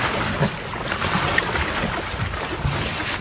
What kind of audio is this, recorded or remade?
recorded